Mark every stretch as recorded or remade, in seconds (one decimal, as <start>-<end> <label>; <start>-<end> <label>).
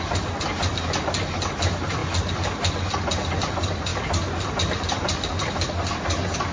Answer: 0.0-6.5 recorded